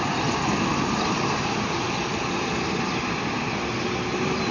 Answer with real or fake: fake